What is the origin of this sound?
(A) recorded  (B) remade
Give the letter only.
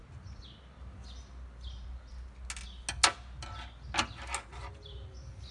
A